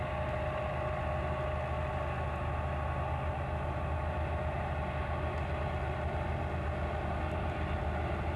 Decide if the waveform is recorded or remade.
recorded